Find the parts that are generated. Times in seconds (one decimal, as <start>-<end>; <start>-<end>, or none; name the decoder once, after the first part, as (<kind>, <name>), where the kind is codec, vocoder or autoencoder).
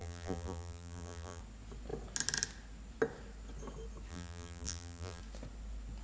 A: 0.0-1.4 (vocoder, BigVGAN v2); 4.1-5.2